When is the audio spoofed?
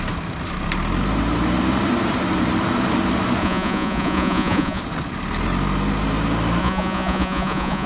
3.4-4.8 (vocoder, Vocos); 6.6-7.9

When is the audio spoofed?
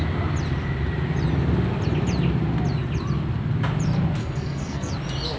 4.2-4.9 (codec, SNAC)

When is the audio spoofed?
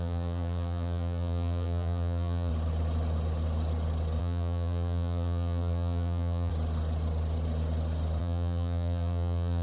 0.0-2.5 (vocoder, BigVGAN v2); 4.2-6.5; 8.2-9.6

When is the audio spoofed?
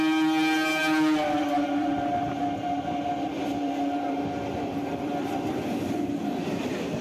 3.4-5.5 (vocoder, BigVGAN v2)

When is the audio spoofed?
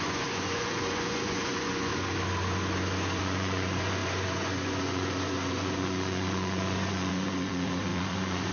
0.0-1.9 (vocoder, Vocos); 3.2-8.5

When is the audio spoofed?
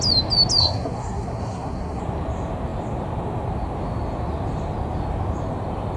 0.6-2.0 (codec, SNAC)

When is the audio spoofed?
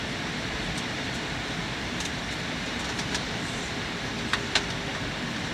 1.6-4.1 (vocoder, BigVGAN v2)